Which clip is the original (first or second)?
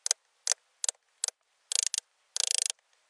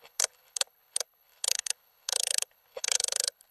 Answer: first